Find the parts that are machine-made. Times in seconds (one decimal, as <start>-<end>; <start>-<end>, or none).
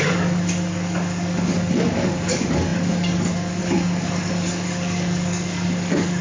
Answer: 0.0-6.2